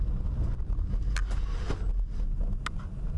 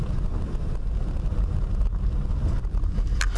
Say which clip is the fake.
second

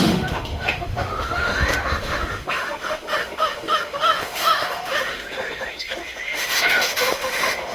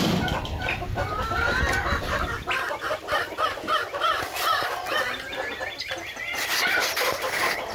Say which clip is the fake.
first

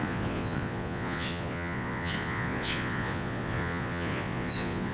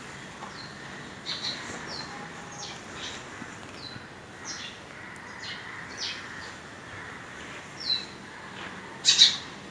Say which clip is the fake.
first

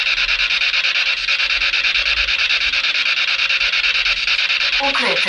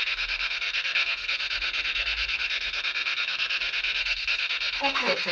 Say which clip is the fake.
second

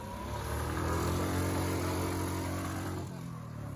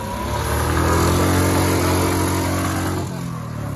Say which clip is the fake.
first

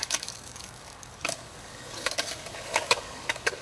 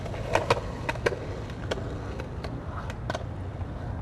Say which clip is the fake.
first